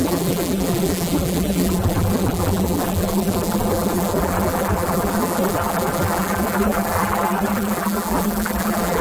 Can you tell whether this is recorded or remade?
remade